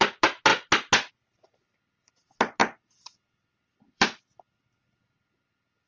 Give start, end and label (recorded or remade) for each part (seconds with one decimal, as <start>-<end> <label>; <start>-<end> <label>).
0.0-2.6 recorded; 2.6-4.2 remade; 4.2-5.9 recorded